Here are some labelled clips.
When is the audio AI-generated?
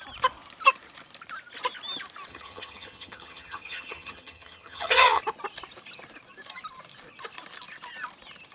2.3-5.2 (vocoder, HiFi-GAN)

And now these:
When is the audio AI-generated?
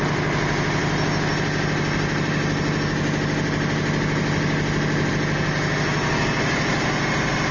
none